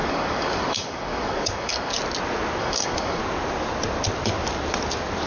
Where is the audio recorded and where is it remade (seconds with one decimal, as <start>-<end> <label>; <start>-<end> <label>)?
0.0-1.9 remade; 1.9-2.6 recorded; 2.6-3.2 remade; 3.2-5.3 recorded